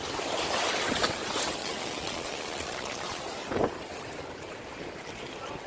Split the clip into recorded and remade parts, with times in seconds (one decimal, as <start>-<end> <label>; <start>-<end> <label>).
0.0-1.6 recorded; 1.6-3.2 remade; 3.2-5.7 recorded